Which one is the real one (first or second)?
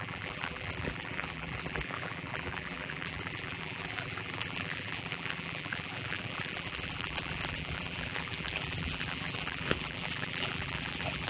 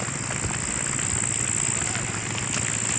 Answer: second